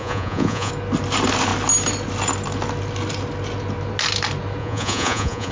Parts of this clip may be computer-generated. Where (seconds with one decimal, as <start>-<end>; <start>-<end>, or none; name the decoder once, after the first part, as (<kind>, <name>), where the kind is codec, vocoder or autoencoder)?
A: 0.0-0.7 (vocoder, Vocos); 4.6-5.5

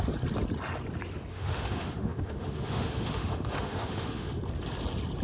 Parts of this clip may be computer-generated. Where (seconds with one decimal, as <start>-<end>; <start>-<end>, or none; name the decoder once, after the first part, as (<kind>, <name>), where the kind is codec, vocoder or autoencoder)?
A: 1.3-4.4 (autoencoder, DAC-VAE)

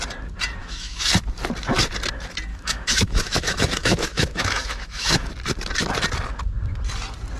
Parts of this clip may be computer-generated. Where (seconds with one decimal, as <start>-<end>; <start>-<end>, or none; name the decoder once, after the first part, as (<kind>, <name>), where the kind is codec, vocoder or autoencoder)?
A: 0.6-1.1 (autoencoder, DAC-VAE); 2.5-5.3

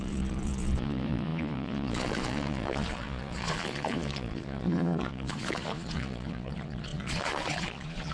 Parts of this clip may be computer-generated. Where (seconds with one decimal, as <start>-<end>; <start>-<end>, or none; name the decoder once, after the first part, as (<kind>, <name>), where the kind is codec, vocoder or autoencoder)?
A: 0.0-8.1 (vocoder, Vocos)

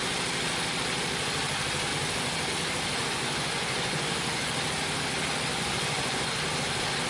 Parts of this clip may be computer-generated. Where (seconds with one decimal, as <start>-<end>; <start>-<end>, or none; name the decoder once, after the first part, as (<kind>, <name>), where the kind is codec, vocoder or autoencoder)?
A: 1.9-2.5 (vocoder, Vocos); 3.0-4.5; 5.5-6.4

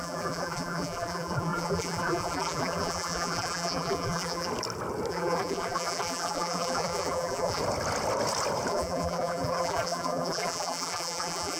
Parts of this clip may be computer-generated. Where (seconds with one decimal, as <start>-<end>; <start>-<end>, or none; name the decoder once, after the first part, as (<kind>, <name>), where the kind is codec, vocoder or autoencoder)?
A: 0.0-4.5 (vocoder, BigVGAN v2); 5.1-7.6; 8.7-11.6